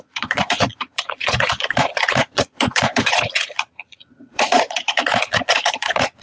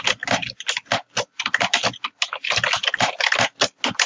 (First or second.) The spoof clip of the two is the first